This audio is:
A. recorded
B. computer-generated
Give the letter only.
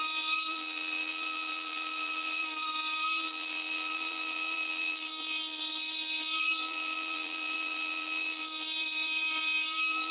B